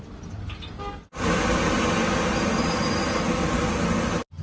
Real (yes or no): yes